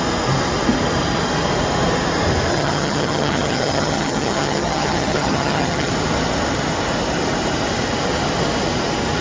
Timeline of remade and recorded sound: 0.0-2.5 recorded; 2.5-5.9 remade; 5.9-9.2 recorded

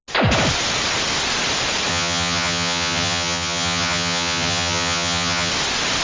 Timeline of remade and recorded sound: 0.0-1.9 recorded; 1.9-5.5 remade; 5.5-6.0 recorded

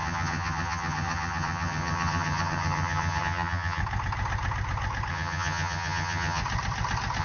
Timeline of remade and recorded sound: 0.0-3.8 remade; 3.8-5.1 recorded; 5.1-6.4 remade; 6.4-7.2 recorded

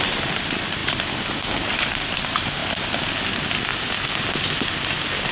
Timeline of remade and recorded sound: 0.0-5.3 recorded

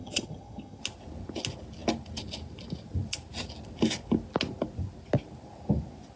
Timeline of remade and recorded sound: 0.0-0.8 remade; 0.8-6.2 recorded

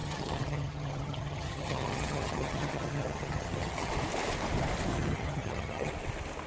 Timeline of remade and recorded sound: 0.0-3.9 remade; 3.9-4.9 recorded; 4.9-5.9 remade; 5.9-6.5 recorded

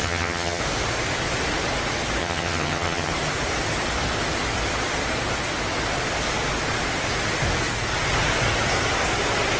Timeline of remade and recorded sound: 0.0-0.6 remade; 0.6-2.2 recorded; 2.2-3.1 remade; 3.1-9.6 recorded